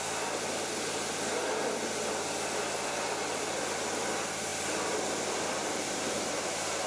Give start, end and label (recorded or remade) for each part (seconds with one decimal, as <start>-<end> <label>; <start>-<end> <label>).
0.0-5.6 recorded; 5.6-6.9 remade